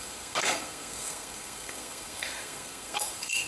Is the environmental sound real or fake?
fake